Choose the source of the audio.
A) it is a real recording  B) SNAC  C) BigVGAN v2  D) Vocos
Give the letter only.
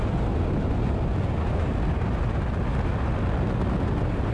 A